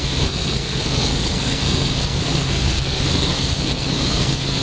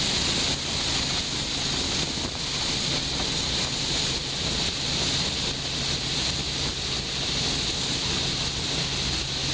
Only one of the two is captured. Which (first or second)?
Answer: second